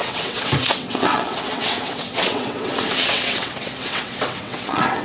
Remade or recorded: remade